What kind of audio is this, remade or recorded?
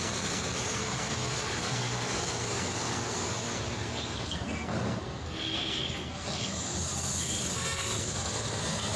remade